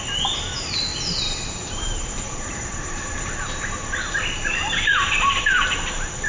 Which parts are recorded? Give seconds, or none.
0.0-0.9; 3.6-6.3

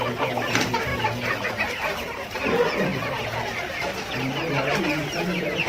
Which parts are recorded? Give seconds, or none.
0.0-5.7

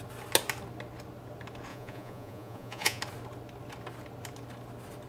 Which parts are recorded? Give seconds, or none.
0.0-1.7; 3.0-5.1

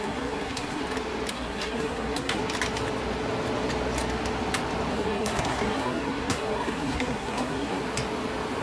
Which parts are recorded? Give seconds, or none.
0.8-1.3; 2.4-4.9; 7.8-8.6

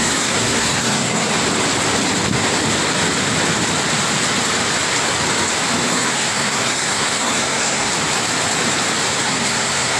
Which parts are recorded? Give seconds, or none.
1.3-5.9; 7.9-9.2

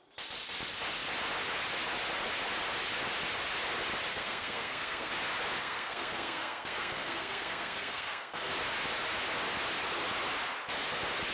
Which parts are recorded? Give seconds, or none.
0.0-4.1; 5.1-5.6; 8.5-11.3

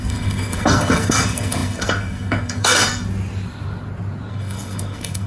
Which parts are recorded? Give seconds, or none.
3.0-4.3